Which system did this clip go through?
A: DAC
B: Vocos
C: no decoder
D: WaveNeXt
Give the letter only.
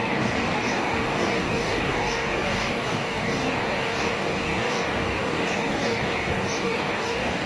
A